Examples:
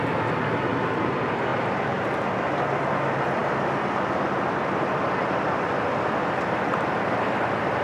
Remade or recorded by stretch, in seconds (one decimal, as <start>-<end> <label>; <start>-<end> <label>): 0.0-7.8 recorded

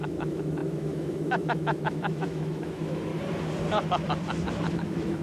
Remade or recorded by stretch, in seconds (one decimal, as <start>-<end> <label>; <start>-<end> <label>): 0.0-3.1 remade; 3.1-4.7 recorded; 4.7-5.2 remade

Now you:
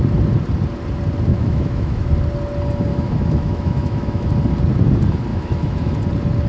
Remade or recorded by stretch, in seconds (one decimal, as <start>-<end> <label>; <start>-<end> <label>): 0.0-1.3 recorded; 1.3-2.1 remade; 2.1-2.9 recorded; 2.9-4.3 remade; 4.3-5.3 recorded; 5.3-6.0 remade; 6.0-6.5 recorded

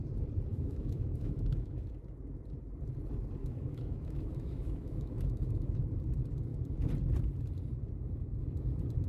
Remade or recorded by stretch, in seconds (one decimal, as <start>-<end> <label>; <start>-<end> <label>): 0.0-0.5 recorded; 0.5-1.8 remade; 1.8-3.4 recorded; 3.4-5.8 remade; 5.8-9.1 recorded